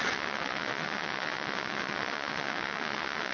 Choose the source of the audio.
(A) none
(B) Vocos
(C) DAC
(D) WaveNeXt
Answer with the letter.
D